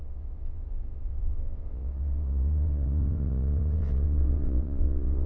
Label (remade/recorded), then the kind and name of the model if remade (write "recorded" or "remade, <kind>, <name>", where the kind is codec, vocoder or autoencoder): remade, vocoder, WaveNeXt